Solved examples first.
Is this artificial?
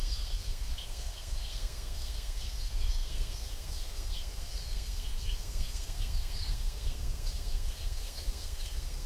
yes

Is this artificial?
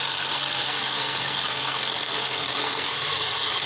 yes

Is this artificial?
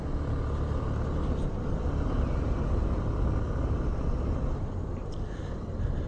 no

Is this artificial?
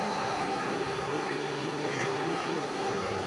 yes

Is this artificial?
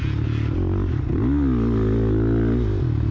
no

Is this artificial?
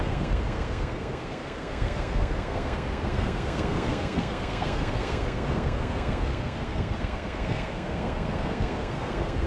yes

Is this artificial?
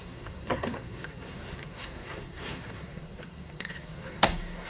yes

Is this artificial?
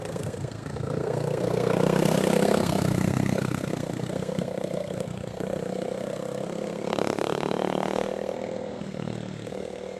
yes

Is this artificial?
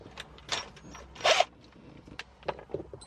no